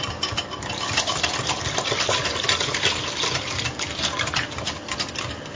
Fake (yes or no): no